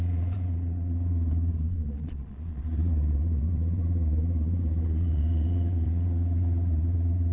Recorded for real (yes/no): no